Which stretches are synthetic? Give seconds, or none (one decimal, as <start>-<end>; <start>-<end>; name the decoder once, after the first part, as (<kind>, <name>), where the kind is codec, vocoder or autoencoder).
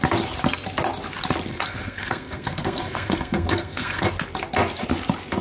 1.5-4.1 (codec, SNAC)